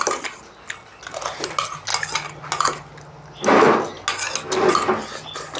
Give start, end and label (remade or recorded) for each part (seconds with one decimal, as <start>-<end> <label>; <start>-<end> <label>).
0.0-5.6 recorded